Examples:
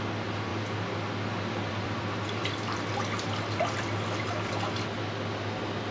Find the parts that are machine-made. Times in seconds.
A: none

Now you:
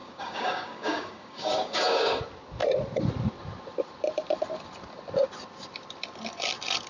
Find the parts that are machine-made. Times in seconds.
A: 0.0-2.2 (codec, DAC)